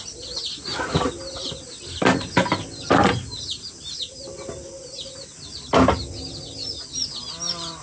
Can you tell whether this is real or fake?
real